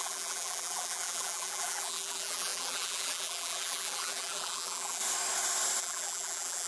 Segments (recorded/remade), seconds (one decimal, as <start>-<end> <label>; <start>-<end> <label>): 0.0-5.0 remade; 5.0-5.8 recorded; 5.8-6.7 remade

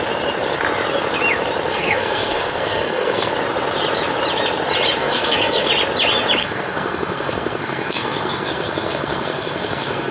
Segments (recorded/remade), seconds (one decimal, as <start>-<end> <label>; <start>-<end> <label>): 0.0-1.7 recorded; 1.7-3.3 remade; 3.3-5.0 recorded; 5.0-5.7 remade; 5.7-6.4 recorded; 6.4-10.1 remade